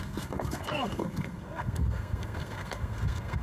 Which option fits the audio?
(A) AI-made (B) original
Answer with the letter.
A